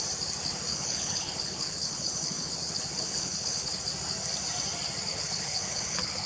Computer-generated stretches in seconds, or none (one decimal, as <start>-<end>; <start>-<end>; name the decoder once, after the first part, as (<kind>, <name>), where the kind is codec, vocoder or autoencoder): 0.7-3.8 (codec, HILCodec); 5.1-6.3